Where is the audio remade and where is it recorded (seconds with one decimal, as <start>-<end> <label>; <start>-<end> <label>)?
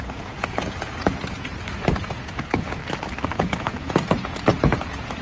0.0-2.8 remade; 2.8-3.4 recorded; 3.4-5.2 remade